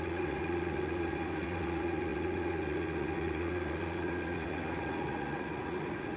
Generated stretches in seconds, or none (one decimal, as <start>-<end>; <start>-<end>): 0.0-6.2